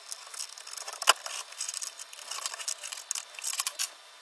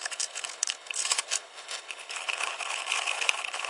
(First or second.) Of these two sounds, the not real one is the second